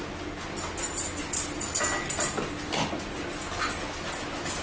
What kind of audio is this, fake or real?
real